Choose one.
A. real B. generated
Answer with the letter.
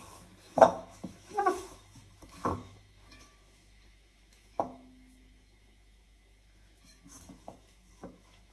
B